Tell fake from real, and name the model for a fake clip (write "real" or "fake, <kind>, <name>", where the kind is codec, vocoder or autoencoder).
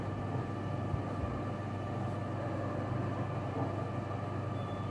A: real